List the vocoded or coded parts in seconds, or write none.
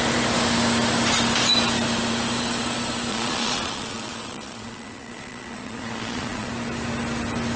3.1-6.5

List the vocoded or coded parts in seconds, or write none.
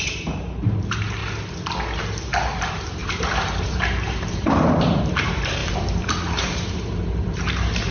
0.0-1.2; 2.0-7.9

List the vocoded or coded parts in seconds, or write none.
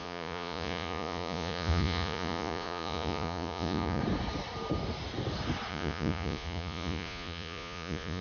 0.0-4.0; 5.7-8.2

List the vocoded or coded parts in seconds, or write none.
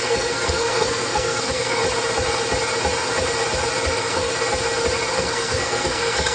0.0-1.8; 3.9-4.3; 5.1-6.3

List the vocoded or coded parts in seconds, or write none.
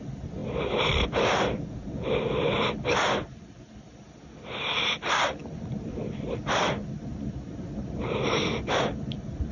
0.0-0.4; 1.1-9.5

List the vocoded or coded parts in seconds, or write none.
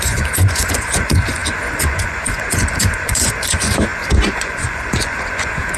0.0-5.8